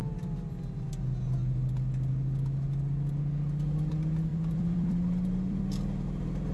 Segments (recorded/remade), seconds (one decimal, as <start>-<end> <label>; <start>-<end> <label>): 0.0-4.3 recorded; 4.3-5.6 remade; 5.6-6.5 recorded